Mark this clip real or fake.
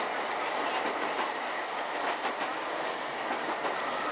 real